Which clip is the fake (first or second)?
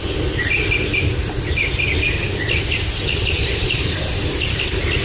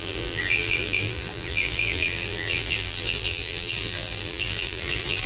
second